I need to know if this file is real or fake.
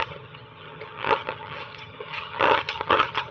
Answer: fake